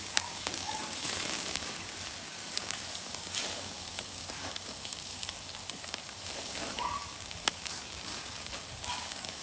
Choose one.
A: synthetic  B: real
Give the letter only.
A